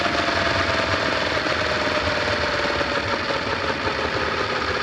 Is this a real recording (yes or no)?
yes